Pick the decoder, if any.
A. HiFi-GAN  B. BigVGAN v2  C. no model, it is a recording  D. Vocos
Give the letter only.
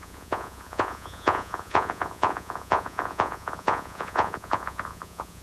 D